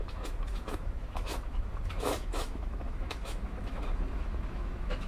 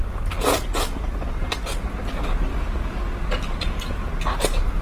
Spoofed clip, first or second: first